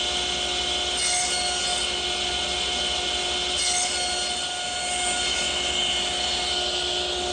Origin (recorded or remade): recorded